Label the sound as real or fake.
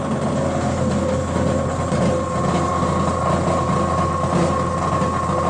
real